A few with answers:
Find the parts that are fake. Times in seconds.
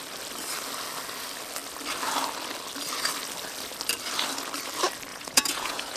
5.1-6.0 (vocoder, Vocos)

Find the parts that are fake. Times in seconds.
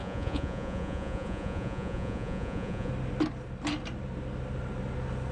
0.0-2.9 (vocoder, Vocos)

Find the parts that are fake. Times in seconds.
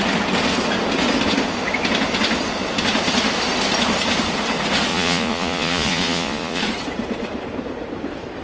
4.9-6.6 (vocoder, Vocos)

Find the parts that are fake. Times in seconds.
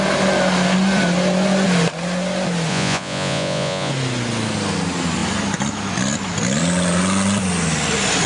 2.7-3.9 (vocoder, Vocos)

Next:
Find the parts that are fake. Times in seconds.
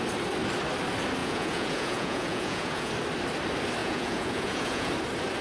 1.2-2.9 (vocoder, Vocos); 3.8-4.9